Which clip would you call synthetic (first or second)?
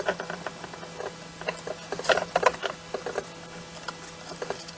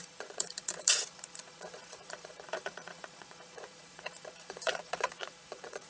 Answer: second